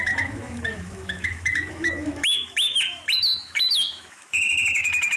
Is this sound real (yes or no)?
no